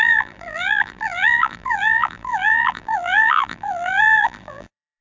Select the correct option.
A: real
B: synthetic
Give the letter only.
B